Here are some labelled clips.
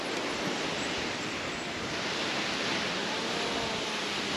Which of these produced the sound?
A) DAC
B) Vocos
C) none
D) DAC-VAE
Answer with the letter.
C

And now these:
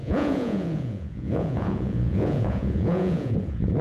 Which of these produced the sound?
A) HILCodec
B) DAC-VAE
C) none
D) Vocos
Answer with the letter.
D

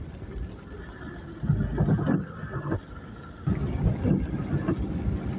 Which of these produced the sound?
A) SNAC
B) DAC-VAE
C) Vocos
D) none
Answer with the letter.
D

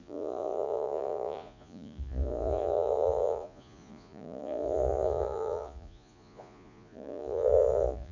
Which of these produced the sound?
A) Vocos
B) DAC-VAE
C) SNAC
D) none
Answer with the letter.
A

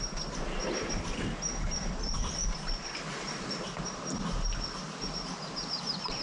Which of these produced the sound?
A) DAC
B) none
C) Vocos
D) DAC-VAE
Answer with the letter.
B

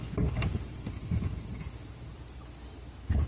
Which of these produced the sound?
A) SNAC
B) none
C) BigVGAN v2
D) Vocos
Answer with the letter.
B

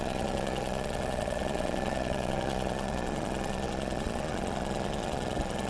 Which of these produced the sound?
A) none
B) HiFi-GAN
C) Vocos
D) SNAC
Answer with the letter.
C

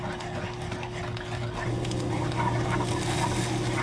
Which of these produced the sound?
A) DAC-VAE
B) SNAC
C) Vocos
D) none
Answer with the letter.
D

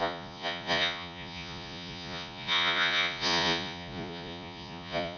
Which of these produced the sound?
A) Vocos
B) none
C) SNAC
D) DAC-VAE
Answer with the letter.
A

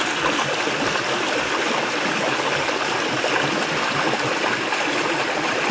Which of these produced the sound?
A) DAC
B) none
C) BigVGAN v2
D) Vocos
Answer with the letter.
B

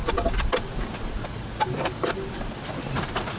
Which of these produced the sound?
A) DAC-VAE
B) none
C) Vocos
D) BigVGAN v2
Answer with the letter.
B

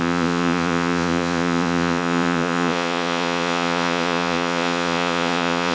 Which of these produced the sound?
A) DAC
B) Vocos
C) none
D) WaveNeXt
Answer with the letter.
B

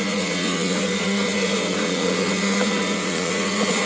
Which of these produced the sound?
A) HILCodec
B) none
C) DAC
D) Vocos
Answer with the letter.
D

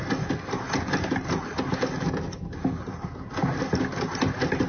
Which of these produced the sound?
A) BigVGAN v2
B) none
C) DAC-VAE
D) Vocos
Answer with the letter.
B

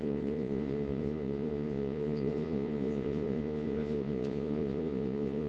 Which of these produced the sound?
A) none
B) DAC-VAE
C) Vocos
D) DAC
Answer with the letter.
C